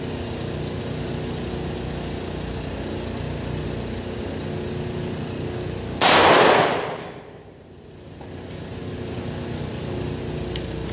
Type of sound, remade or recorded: recorded